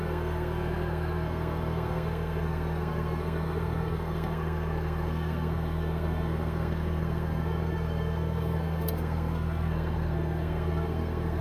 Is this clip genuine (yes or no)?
no